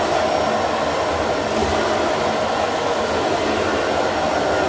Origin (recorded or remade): recorded